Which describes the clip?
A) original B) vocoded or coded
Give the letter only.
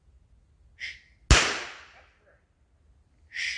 A